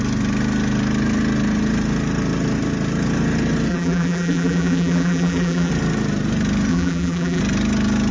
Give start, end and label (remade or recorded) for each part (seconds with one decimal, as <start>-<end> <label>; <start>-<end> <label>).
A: 0.0-3.7 recorded; 3.7-5.7 remade; 5.7-6.7 recorded; 6.7-7.4 remade; 7.4-8.1 recorded